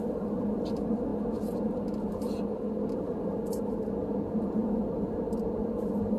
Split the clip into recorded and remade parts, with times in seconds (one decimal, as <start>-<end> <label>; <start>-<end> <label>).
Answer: 0.0-4.0 recorded; 4.0-4.8 remade; 4.8-6.2 recorded

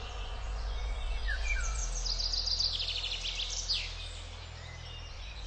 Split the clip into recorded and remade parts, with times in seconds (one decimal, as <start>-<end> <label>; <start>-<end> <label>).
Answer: 0.0-1.8 remade; 1.8-5.1 recorded; 5.1-5.5 remade

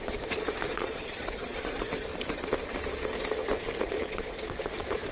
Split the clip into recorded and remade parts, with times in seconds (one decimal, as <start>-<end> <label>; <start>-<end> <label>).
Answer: 0.0-2.1 remade; 2.1-3.8 recorded; 3.8-5.1 remade

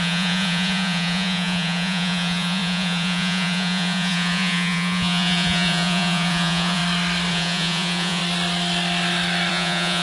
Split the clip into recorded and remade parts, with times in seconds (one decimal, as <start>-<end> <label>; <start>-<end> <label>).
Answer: 0.0-6.8 remade; 6.8-7.3 recorded; 7.3-8.2 remade; 8.2-9.5 recorded; 9.5-10.0 remade

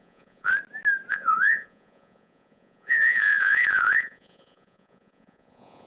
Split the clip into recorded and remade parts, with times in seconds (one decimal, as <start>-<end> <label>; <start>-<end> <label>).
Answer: 0.0-0.5 remade; 0.5-1.1 recorded; 1.1-5.9 remade

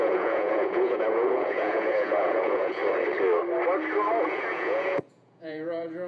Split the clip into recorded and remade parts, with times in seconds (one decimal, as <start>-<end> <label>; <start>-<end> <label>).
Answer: 0.0-2.8 remade; 2.8-4.2 recorded; 4.2-6.1 remade

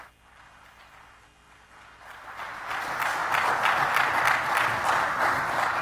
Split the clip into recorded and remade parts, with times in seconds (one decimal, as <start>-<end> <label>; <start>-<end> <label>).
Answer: 0.0-5.8 recorded